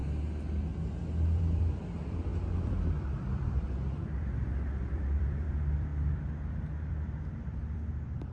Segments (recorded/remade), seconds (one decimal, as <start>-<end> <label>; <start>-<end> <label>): 0.0-1.4 recorded; 1.4-5.9 remade; 5.9-6.9 recorded; 6.9-8.3 remade